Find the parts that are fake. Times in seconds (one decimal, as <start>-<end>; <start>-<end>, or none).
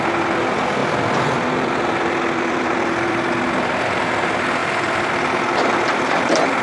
0.8-3.3; 4.6-5.4